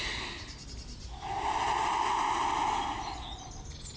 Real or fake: real